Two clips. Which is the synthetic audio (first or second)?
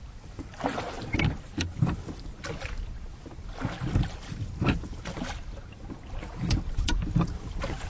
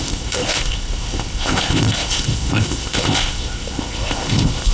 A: second